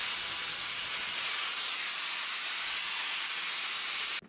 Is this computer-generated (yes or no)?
no